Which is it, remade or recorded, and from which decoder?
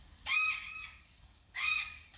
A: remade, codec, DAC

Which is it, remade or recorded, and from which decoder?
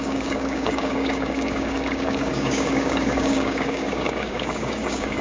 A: remade, codec, DAC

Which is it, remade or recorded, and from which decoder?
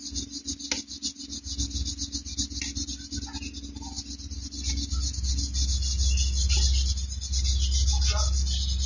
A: recorded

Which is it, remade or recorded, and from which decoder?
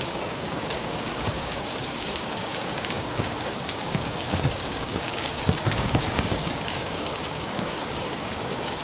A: remade, codec, DAC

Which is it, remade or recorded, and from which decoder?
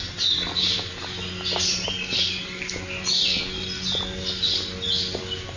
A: recorded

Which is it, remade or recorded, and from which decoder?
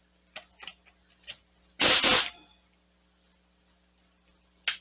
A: recorded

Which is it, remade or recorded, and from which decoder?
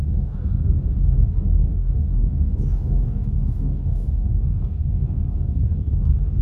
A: remade, codec, DAC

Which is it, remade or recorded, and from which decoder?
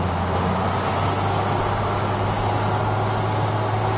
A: recorded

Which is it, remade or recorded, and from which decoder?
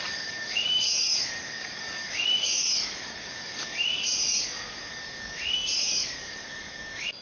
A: remade, codec, DAC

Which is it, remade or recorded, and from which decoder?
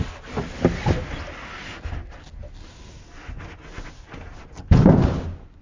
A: recorded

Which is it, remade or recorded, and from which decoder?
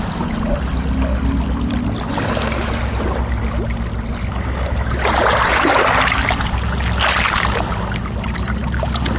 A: recorded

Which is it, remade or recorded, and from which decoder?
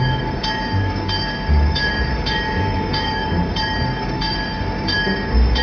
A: remade, codec, DAC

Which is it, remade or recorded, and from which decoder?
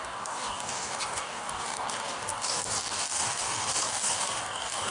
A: remade, codec, DAC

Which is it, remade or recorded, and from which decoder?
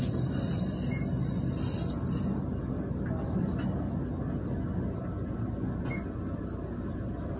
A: recorded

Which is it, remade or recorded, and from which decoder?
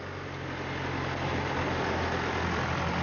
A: recorded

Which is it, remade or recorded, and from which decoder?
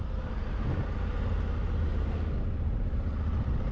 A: recorded